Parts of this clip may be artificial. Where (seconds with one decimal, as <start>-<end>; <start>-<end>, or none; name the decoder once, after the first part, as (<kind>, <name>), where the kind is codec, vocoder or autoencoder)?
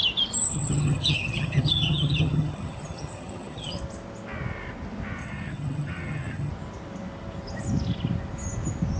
0.5-3.8 (vocoder, HiFi-GAN); 5.2-6.5